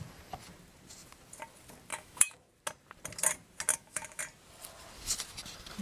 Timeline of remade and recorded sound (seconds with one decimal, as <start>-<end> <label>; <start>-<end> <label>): 0.0-1.9 recorded; 1.9-2.5 remade; 2.5-3.7 recorded; 3.7-4.2 remade; 4.2-5.8 recorded